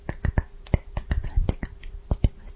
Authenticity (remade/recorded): remade